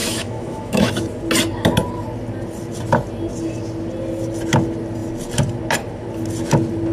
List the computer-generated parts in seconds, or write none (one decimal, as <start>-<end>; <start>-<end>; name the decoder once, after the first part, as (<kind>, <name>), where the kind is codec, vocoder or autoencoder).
0.0-0.9 (autoencoder, DAC-VAE)